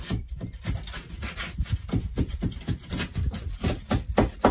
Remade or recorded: recorded